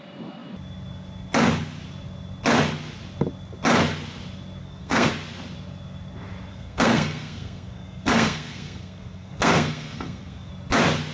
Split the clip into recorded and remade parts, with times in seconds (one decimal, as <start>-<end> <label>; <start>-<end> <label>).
0.0-4.6 recorded; 4.6-5.1 remade; 5.1-6.5 recorded; 6.5-10.5 remade; 10.5-11.1 recorded